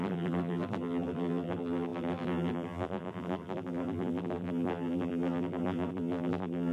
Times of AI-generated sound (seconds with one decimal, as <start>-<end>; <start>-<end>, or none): 0.0-6.7